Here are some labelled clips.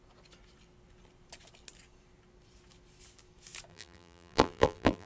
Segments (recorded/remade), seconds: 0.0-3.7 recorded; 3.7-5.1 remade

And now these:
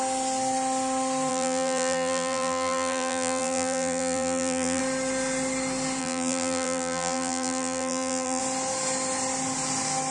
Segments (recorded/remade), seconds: 0.0-1.3 recorded; 1.3-4.8 remade; 4.8-6.0 recorded; 6.0-8.4 remade; 8.4-10.1 recorded

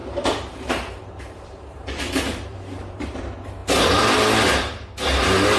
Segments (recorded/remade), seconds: 0.0-3.2 remade; 3.2-5.6 recorded

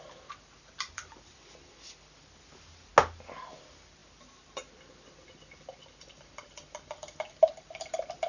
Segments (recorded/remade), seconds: 0.0-2.9 remade; 2.9-3.5 recorded; 3.5-8.3 remade

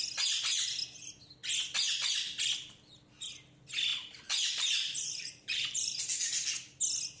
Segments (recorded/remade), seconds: 0.0-3.9 recorded; 3.9-6.0 remade; 6.0-7.2 recorded

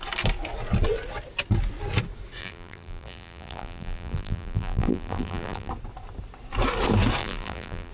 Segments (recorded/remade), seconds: 0.0-2.4 recorded; 2.4-5.7 remade; 5.7-7.2 recorded; 7.2-7.9 remade

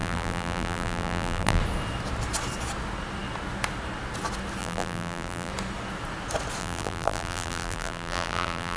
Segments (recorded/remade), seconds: 0.0-1.6 remade; 1.6-4.6 recorded; 4.6-5.5 remade; 5.5-6.6 recorded; 6.6-8.8 remade

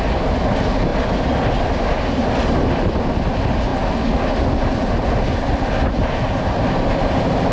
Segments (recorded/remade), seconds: 0.0-7.5 recorded